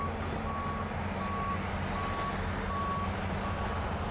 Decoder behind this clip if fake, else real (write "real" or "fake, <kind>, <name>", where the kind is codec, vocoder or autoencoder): real